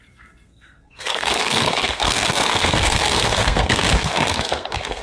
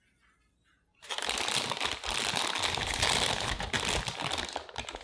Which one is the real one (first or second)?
second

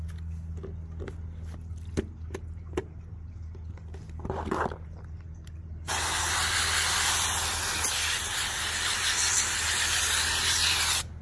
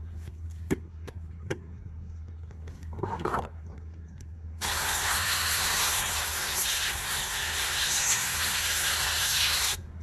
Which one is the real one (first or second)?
first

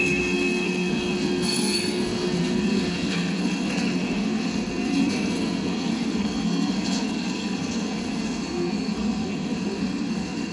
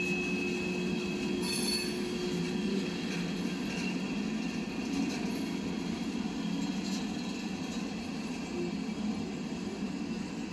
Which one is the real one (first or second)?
second